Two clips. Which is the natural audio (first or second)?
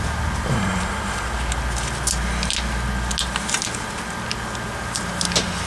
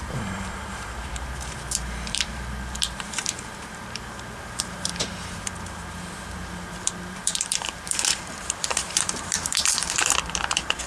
first